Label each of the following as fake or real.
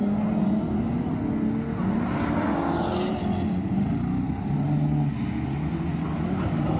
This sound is real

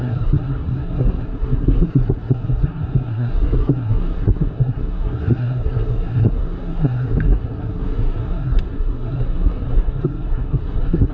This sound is fake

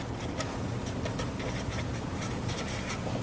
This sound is real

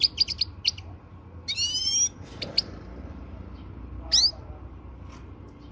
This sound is real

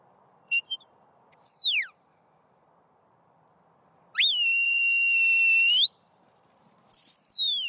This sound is fake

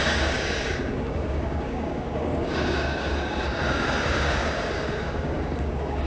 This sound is fake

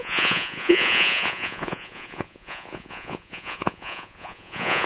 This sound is fake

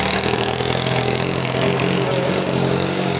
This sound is fake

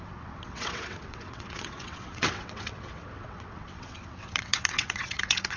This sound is fake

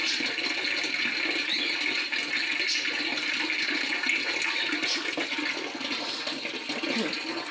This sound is real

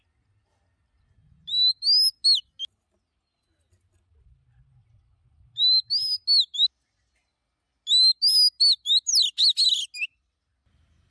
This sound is real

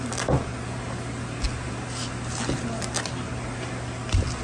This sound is real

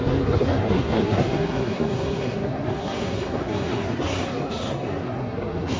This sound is fake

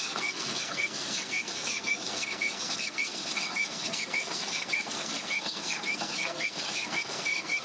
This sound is fake